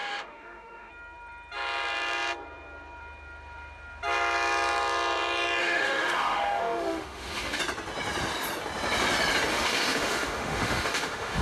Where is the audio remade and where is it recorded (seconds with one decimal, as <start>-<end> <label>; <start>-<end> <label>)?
0.0-0.9 remade; 0.9-5.6 recorded; 5.6-7.6 remade; 7.6-9.5 recorded; 9.5-11.4 remade